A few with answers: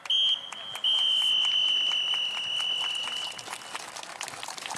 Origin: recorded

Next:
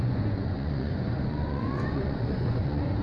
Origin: remade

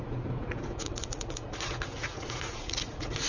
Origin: remade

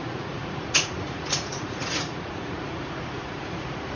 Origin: remade